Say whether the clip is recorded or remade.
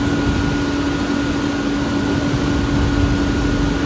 recorded